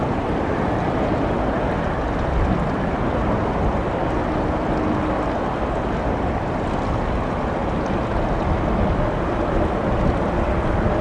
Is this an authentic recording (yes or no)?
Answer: yes